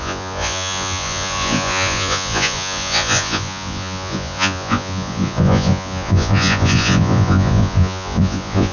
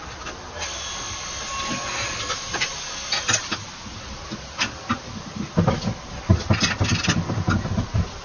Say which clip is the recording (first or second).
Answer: second